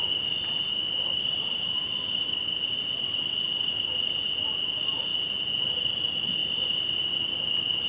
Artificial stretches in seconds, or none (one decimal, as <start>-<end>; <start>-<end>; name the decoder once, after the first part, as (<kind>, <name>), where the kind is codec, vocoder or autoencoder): 0.7-2.7 (vocoder, BigVGAN v2); 6.4-7.1